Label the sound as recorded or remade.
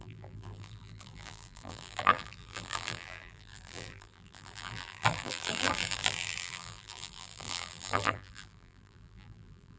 remade